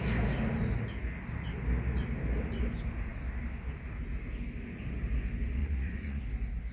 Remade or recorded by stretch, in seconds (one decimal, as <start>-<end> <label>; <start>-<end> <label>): 0.0-5.6 recorded; 5.6-6.2 remade; 6.2-6.7 recorded